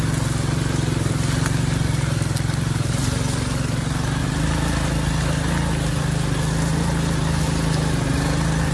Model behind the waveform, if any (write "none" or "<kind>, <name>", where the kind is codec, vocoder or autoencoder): none